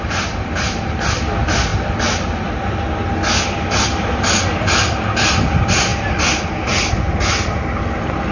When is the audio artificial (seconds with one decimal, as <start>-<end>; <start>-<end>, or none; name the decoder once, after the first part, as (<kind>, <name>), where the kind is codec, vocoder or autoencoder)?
none